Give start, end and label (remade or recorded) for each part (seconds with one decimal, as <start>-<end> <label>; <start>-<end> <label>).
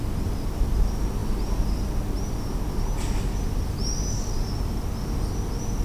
0.0-5.8 recorded